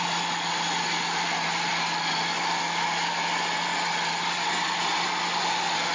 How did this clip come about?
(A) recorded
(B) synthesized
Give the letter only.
A